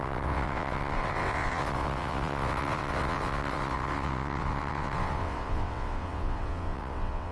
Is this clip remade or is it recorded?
remade